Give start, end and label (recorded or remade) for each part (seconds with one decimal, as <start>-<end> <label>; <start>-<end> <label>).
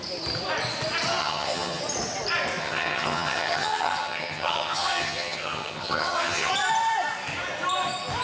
0.0-1.2 recorded; 1.2-1.8 remade; 1.8-2.6 recorded; 2.6-6.5 remade; 6.5-8.2 recorded